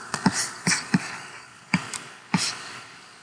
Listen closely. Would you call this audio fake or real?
fake